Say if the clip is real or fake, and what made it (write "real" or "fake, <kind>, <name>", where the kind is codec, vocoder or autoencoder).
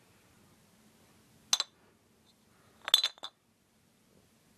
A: real